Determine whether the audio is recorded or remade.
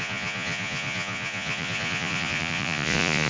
remade